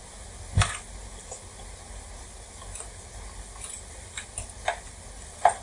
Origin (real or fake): real